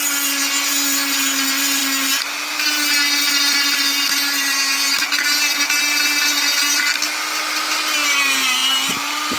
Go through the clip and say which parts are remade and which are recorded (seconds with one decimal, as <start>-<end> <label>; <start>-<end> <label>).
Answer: 0.0-9.4 recorded